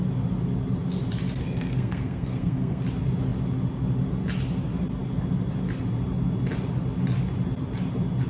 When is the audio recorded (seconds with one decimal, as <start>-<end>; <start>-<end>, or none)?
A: 0.0-1.4; 2.8-8.3